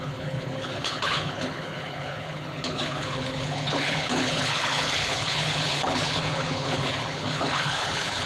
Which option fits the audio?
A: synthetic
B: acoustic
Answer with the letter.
A